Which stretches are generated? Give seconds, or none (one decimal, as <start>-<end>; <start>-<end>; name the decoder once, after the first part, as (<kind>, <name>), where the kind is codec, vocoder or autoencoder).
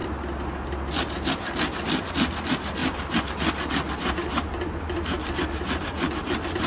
0.0-2.1 (vocoder, BigVGAN v2)